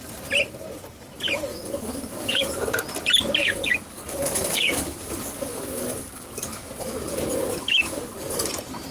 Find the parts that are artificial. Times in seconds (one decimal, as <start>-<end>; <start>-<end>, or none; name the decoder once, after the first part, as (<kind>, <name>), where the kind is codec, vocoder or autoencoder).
1.5-2.7 (codec, DAC); 3.4-8.5